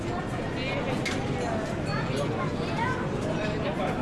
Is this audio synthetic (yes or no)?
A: no